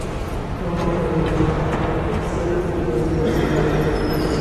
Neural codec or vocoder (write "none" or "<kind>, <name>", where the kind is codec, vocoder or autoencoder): none